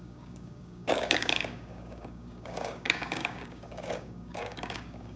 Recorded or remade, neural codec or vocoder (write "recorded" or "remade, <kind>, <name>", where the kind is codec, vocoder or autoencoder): remade, codec, DAC